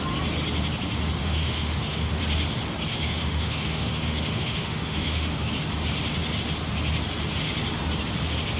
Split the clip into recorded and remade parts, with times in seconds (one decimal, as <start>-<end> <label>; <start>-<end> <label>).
0.0-1.2 recorded; 1.2-2.2 remade; 2.2-2.9 recorded; 2.9-5.5 remade; 5.5-8.6 recorded